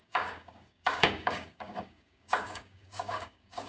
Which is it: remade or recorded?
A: remade